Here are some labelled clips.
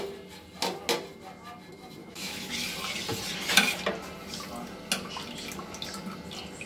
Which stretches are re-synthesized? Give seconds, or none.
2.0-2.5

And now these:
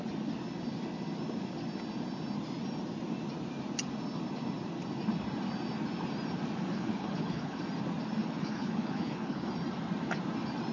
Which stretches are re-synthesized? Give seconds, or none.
6.7-7.6; 8.2-9.5

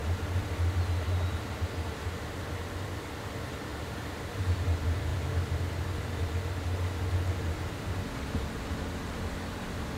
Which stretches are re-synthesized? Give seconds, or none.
none

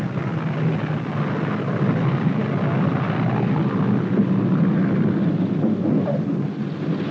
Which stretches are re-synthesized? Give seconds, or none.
none